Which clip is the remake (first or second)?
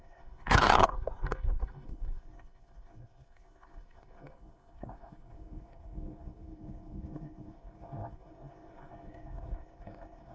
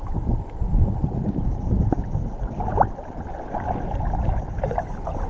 first